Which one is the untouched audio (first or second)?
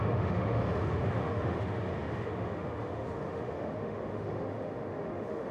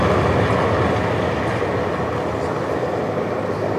second